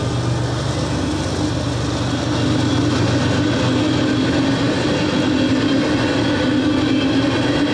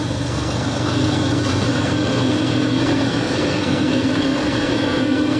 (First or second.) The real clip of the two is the first